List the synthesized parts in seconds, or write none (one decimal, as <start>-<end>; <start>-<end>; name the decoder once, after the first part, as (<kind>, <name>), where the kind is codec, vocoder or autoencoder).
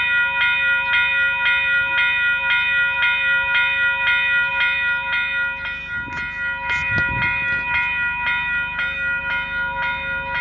none